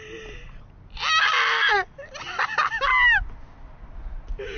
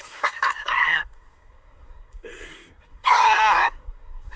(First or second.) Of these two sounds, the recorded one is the first